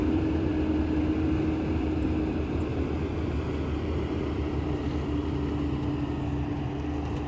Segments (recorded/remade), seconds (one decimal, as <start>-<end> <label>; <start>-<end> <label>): 0.0-0.5 remade; 0.5-7.3 recorded